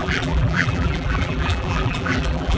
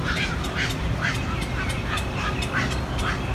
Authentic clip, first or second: second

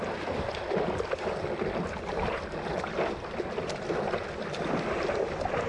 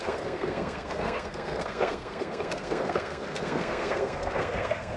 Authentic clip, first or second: first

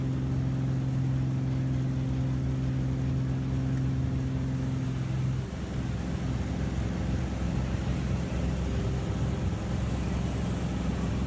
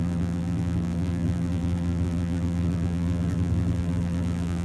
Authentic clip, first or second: first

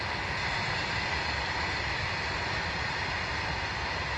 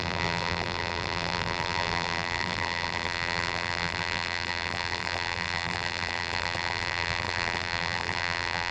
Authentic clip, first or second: first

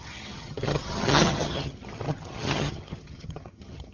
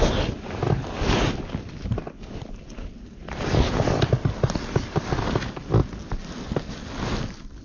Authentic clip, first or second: second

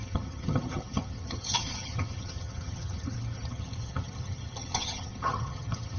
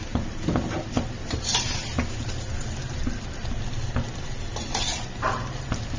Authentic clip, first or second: second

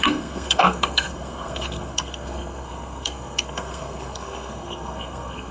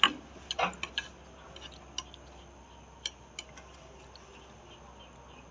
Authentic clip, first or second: second